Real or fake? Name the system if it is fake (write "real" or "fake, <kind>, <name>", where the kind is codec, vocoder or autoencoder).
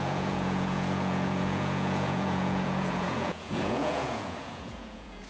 fake, vocoder, Vocos